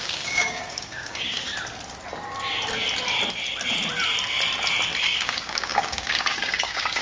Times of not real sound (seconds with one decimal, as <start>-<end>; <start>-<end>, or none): 0.0-1.5; 5.0-7.0